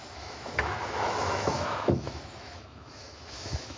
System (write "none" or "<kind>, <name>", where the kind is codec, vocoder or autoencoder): autoencoder, DAC-VAE